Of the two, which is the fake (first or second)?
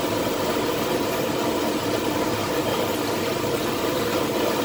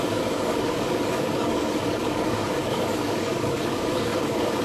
second